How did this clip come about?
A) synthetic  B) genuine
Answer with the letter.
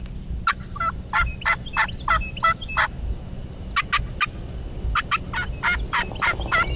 B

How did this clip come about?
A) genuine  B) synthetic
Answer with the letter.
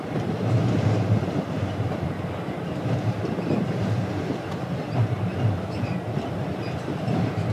A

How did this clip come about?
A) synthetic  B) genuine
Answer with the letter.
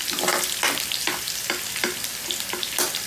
B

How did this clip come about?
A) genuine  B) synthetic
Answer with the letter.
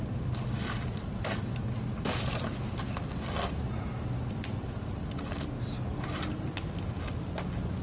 A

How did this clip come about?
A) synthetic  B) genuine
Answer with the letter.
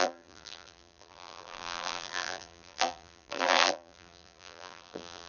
A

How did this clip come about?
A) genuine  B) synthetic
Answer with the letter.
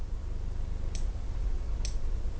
A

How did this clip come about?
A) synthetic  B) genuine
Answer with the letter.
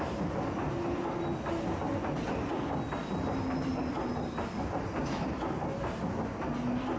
B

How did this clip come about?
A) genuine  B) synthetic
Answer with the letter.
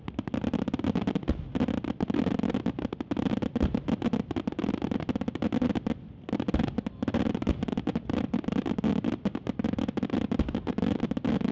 A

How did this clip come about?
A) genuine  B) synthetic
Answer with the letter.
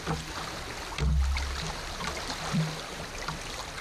A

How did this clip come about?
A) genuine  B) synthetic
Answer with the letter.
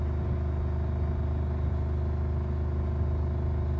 A